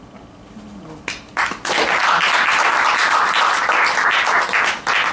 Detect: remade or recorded recorded